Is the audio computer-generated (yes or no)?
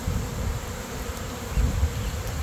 no